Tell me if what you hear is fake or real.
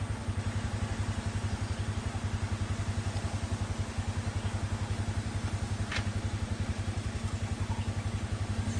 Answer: real